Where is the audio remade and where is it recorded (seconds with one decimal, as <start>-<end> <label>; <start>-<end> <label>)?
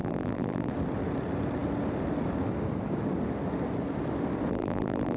0.0-0.7 remade; 0.7-4.5 recorded; 4.5-5.2 remade